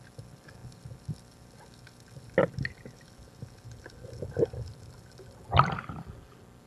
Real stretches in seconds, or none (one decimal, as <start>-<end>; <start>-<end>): 0.0-6.7